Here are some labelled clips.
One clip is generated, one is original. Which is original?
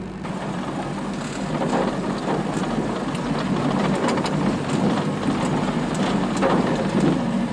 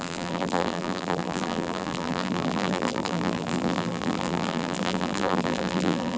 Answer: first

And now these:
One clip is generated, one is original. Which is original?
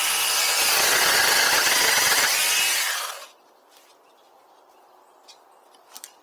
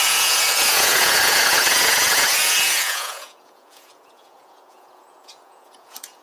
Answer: first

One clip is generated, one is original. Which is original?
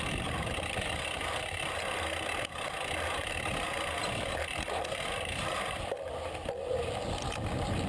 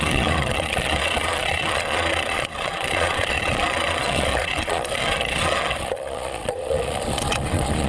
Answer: first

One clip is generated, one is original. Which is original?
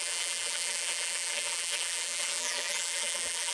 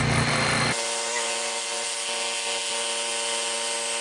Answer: second